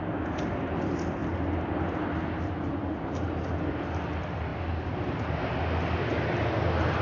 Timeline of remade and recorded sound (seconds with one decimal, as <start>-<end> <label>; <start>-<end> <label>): 0.0-7.0 recorded